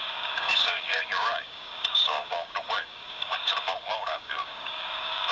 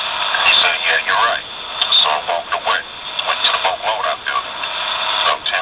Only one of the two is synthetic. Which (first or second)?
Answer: first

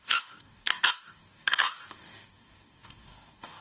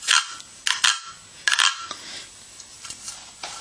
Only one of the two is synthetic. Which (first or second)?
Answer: first